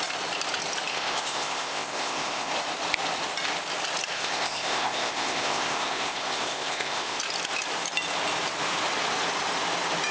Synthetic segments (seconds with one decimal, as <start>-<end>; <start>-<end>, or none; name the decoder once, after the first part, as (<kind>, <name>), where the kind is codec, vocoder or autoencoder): 0.9-2.5 (codec, ZipCodec); 4.1-7.2